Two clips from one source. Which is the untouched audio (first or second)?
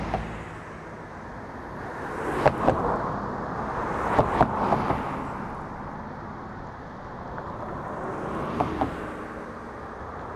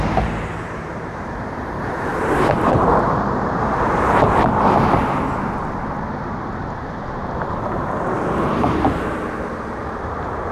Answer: first